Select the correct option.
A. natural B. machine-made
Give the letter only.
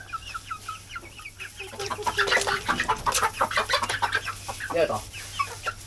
A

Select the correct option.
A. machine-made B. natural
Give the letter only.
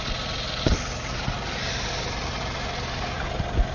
B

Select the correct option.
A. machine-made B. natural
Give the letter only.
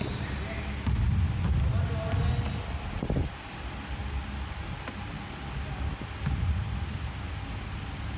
B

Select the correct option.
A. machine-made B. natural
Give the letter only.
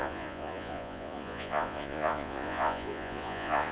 A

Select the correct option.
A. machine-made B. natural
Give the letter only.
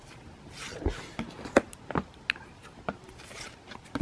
B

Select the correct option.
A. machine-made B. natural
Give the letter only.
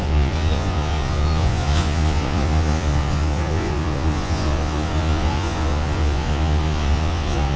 A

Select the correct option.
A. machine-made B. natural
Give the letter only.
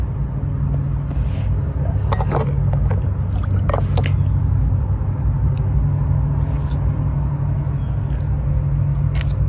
B